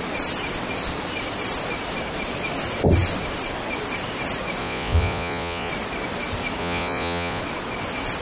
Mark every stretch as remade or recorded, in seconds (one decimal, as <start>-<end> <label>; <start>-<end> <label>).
0.0-4.6 recorded; 4.6-5.7 remade; 5.7-6.6 recorded; 6.6-7.4 remade; 7.4-8.2 recorded

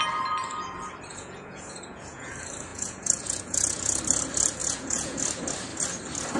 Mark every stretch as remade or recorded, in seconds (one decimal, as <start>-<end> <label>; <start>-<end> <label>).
0.0-1.1 recorded; 1.1-2.3 remade; 2.3-2.7 recorded; 2.7-4.0 remade; 4.0-4.6 recorded; 4.6-5.2 remade; 5.2-6.4 recorded